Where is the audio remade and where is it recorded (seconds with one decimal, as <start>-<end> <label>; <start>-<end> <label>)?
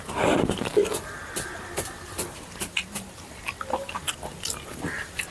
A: 0.0-5.3 recorded